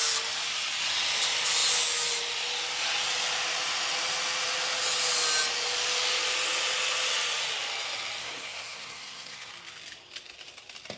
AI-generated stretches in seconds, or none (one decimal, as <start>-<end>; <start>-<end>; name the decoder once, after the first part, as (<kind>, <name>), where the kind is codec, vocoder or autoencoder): 8.2-9.5 (codec, SNAC)